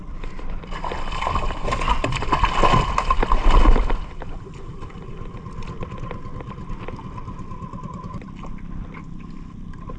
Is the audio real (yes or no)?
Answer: yes